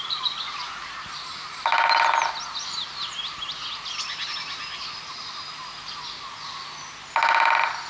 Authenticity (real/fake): real